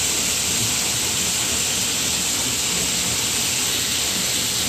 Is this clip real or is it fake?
real